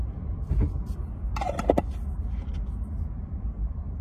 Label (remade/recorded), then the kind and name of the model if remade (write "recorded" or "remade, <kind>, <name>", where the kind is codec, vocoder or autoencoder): recorded